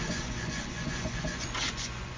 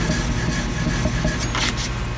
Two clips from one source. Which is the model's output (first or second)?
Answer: first